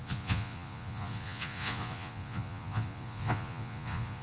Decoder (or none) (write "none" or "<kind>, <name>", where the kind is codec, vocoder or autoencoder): vocoder, Vocos